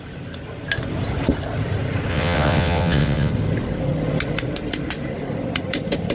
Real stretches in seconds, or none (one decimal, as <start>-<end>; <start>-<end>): 0.0-2.1; 3.3-6.1